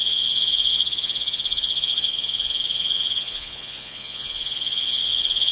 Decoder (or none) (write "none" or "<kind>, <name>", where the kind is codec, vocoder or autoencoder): vocoder, Vocos